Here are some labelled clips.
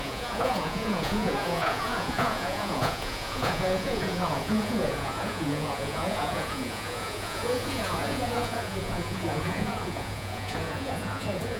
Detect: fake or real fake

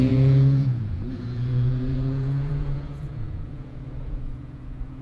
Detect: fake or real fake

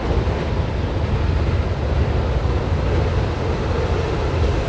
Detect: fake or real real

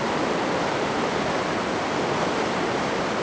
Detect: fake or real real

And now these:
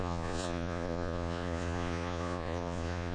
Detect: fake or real fake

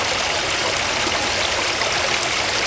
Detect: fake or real real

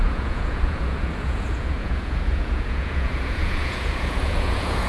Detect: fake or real fake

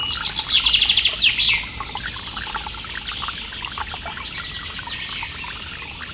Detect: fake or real real